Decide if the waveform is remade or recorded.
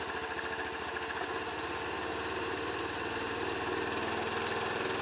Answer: recorded